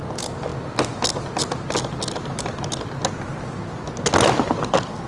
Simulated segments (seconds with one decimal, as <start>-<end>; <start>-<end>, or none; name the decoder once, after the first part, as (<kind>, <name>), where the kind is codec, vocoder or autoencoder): none